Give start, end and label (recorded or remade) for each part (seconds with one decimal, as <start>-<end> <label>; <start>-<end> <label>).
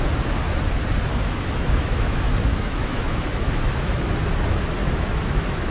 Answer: 0.0-1.1 recorded; 1.1-4.0 remade; 4.0-4.8 recorded; 4.8-5.7 remade